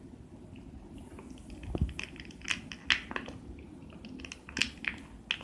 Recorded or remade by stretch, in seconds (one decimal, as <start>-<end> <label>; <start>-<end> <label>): 0.0-5.4 recorded